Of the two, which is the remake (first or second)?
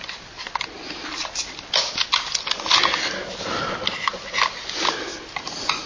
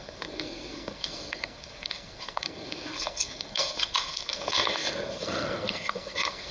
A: second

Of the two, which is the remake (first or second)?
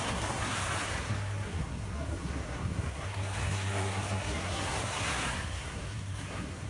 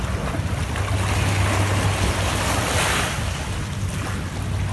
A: first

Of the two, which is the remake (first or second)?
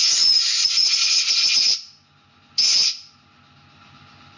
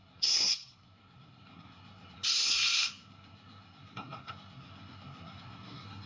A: second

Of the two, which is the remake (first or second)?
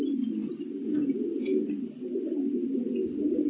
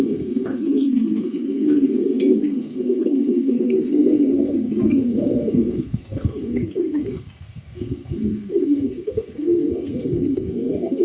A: second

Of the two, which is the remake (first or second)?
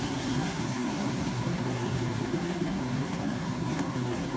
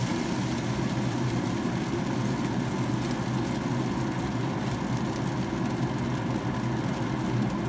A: first